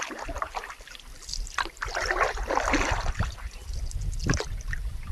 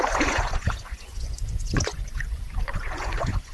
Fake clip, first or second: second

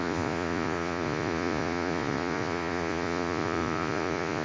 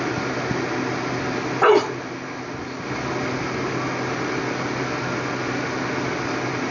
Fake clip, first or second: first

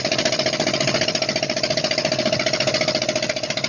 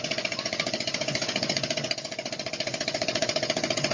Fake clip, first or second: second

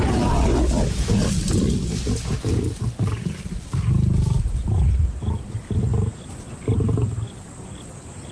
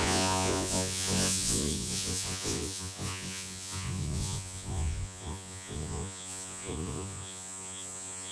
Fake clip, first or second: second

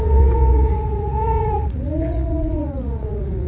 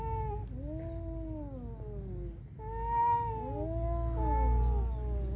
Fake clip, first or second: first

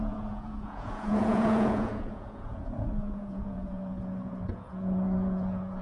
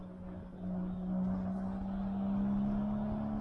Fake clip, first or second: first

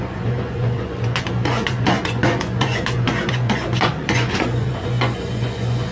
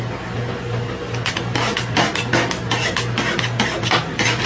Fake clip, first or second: first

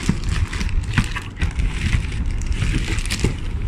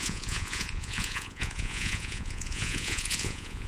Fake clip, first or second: second